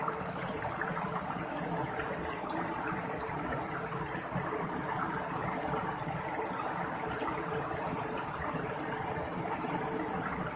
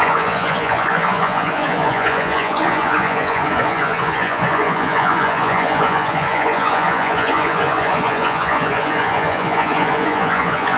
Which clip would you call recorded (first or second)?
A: first